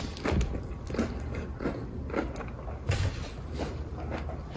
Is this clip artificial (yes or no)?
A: no